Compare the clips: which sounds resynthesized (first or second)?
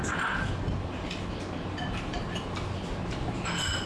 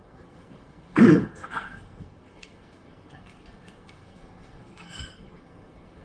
second